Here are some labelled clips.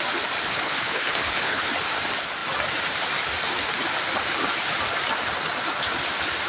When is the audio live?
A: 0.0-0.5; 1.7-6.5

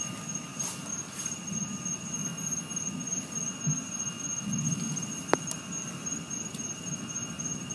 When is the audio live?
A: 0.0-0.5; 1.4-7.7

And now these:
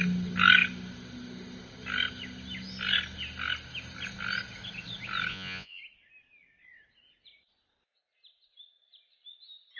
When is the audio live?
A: 0.0-5.3; 5.8-9.8

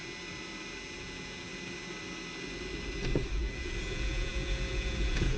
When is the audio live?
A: 0.0-1.0; 1.5-3.4

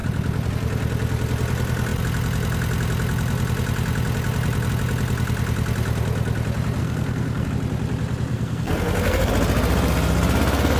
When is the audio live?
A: 0.0-6.8; 7.5-8.3; 9.3-10.8

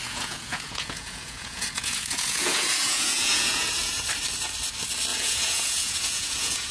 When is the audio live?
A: 4.0-5.1